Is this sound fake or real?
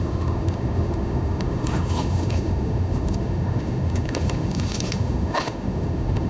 fake